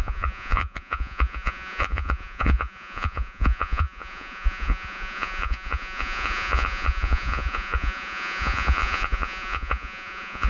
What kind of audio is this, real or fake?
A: fake